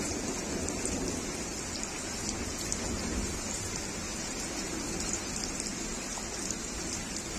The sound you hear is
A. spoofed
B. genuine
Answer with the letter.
B